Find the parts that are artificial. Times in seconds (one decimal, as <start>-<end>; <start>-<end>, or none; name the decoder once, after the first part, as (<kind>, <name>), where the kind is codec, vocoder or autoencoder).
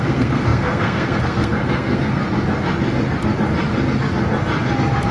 0.0-2.2 (codec, SNAC)